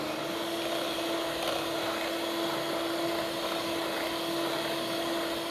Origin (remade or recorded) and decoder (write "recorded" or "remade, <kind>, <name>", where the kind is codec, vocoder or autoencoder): recorded